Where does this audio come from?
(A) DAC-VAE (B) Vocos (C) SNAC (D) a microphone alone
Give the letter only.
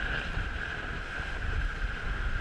D